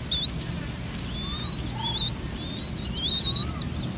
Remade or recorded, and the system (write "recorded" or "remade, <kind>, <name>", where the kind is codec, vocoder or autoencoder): recorded